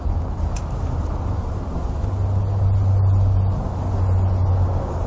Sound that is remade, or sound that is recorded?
recorded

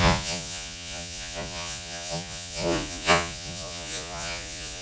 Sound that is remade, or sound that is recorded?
remade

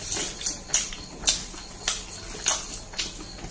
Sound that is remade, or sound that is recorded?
recorded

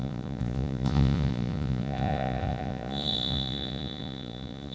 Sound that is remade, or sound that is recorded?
remade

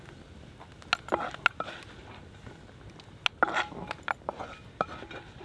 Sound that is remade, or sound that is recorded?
recorded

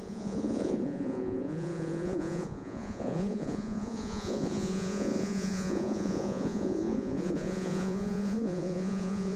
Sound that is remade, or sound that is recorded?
remade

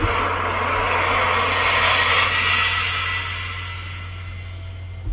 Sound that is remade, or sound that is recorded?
recorded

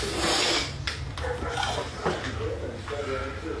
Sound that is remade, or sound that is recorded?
recorded